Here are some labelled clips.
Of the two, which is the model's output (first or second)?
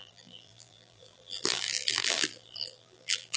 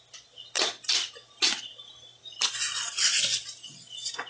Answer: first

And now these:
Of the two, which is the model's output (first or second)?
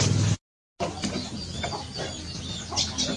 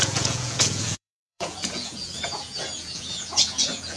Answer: second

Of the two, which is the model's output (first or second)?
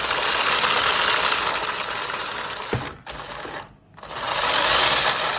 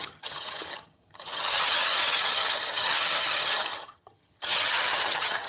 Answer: second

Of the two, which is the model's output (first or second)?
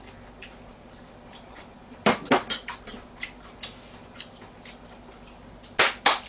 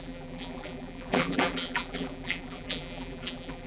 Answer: second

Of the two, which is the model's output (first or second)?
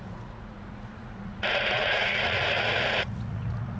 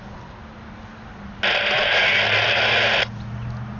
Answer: first